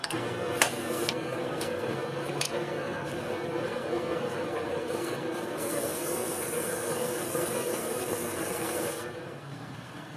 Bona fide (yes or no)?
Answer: no